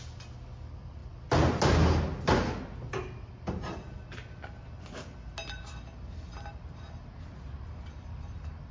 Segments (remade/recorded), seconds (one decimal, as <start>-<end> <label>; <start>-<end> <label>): 0.0-8.7 recorded